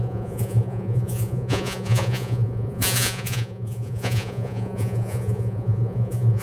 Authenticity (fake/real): fake